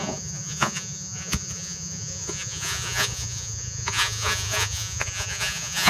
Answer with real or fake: fake